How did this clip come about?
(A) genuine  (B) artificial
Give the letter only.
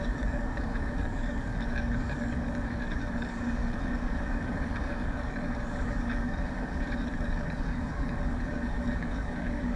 B